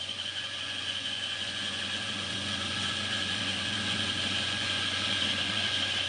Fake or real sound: fake